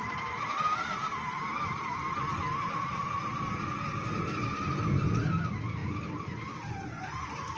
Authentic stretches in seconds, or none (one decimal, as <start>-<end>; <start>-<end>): 0.0-7.6